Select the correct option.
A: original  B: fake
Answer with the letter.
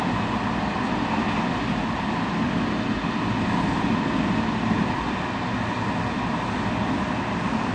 A